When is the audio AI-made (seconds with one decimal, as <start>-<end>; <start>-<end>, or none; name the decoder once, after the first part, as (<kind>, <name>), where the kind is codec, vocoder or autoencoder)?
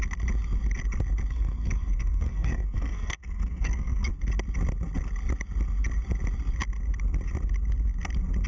1.3-4.1 (codec, SNAC)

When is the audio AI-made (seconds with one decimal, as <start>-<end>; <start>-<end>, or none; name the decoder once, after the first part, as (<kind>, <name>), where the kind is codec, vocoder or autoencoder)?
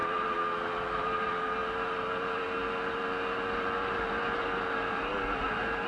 none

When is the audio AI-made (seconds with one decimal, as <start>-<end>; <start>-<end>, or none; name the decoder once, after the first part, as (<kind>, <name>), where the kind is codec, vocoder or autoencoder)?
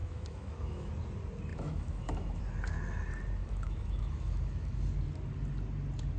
0.0-0.9 (autoencoder, DAC-VAE); 1.5-2.4; 3.4-4.8